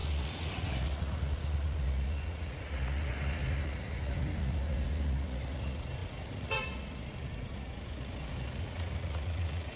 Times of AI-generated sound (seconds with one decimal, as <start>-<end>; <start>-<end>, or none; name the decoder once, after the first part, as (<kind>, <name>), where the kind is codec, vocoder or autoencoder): 0.0-9.8 (vocoder, Vocos)